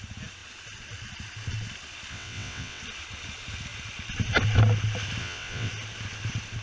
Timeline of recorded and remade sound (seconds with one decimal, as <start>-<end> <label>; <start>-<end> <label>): 0.0-2.1 recorded; 2.1-2.8 remade; 2.8-5.2 recorded; 5.2-5.7 remade; 5.7-6.6 recorded